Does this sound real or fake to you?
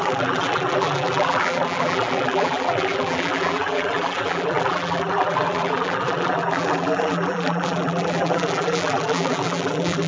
fake